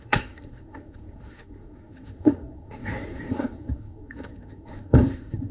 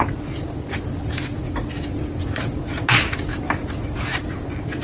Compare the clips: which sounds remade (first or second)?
first